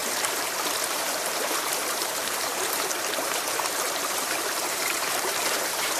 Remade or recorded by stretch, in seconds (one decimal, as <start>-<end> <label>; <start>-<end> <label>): 0.0-0.8 recorded; 0.8-6.0 remade